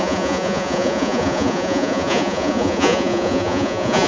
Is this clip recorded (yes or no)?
no